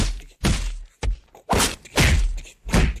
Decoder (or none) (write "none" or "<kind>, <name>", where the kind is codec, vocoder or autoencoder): none